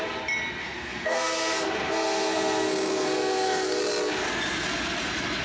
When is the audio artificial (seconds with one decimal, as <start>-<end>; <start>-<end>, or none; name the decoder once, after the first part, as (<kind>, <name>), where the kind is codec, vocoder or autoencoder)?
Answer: 0.6-3.8 (codec, SNAC)

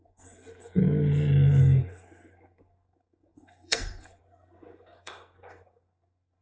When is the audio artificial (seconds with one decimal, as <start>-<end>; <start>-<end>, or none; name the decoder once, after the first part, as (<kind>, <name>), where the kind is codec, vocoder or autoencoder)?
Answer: 0.0-0.8 (codec, SNAC); 1.6-6.4

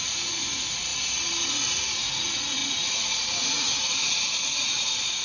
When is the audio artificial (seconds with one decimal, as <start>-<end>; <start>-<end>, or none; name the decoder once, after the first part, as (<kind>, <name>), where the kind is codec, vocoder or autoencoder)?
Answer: 0.0-0.9 (vocoder, Vocos); 1.5-5.2